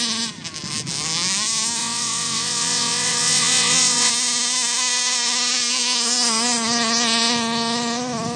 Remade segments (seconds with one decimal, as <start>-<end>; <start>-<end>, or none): 1.8-4.1